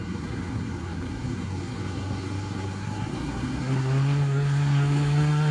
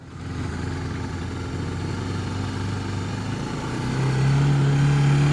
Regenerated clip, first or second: first